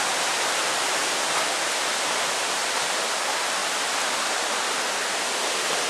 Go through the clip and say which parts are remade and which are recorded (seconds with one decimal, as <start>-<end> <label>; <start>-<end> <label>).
0.0-3.6 recorded; 3.6-4.9 remade; 4.9-5.9 recorded